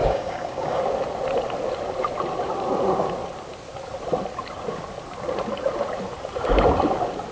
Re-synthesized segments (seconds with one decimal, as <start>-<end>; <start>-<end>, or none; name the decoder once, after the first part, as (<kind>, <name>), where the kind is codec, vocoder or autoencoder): 0.0-0.8 (codec, DAC)

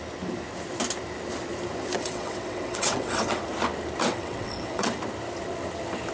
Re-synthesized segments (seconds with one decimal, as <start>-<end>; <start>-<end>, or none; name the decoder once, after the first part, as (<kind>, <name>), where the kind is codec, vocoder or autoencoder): 2.0-3.4 (vocoder, WaveNeXt); 4.1-5.0

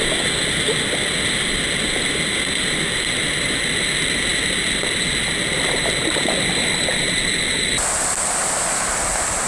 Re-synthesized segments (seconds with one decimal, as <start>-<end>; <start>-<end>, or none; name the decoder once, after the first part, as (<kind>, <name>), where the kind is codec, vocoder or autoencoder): none

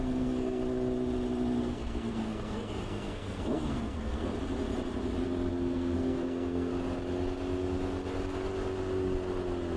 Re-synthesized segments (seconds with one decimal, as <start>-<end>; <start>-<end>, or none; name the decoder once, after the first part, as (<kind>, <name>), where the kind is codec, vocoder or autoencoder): 0.0-0.6 (codec, SNAC); 1.6-4.3; 5.5-6.7